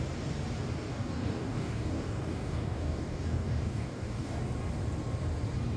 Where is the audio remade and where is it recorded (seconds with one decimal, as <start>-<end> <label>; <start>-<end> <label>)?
0.0-0.9 recorded; 0.9-4.4 remade; 4.4-5.8 recorded